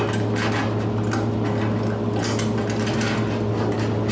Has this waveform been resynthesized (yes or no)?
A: no